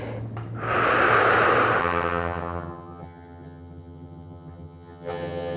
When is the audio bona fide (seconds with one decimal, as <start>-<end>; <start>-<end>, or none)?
0.0-1.8